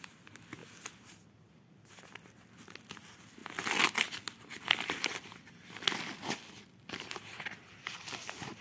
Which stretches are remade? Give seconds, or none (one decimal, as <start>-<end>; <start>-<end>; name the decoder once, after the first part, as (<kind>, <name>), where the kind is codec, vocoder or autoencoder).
none